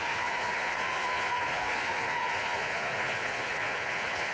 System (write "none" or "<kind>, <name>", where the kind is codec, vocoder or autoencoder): vocoder, Vocos